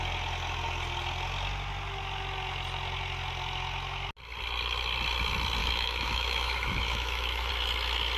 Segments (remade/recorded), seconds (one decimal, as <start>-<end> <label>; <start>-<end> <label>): 0.0-5.6 recorded; 5.6-7.5 remade; 7.5-8.2 recorded